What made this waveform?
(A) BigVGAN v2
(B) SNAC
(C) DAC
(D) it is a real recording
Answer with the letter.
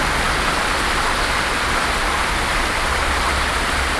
D